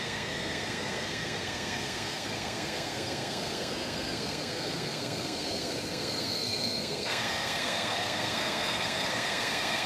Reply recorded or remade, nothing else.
remade